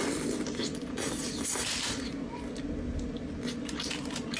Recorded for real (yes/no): yes